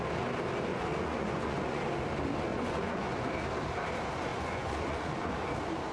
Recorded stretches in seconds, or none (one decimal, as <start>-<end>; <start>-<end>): 0.0-0.7; 1.8-2.5; 3.2-4.3; 5.3-5.9